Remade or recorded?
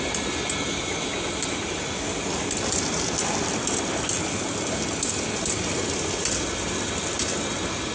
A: recorded